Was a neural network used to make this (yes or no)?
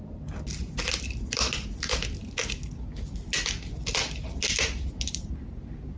no